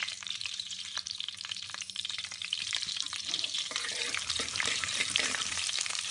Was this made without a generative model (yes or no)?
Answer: no